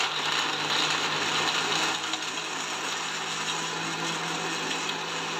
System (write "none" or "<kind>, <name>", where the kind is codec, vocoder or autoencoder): none